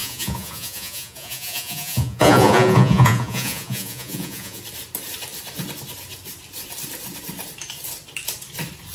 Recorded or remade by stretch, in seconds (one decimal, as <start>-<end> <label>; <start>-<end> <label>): 0.0-4.6 remade; 4.6-8.9 recorded